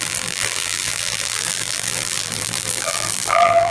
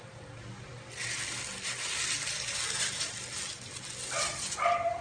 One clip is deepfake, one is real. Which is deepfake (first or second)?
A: first